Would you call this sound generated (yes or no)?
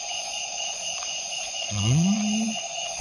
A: yes